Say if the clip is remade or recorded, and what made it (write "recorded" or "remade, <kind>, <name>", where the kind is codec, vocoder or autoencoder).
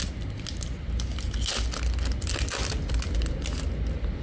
recorded